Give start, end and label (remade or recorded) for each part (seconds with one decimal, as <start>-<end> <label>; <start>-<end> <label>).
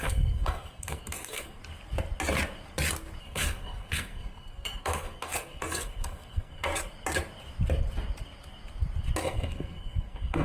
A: 0.0-1.6 remade; 1.6-3.2 recorded; 3.2-6.7 remade; 6.7-9.2 recorded; 9.2-10.4 remade